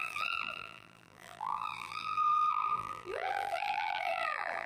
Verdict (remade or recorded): remade